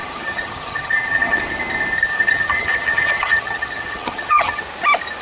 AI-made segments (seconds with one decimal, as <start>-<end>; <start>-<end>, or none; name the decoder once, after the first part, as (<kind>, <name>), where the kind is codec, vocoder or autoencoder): 0.0-1.4 (vocoder, HiFi-GAN); 2.1-4.6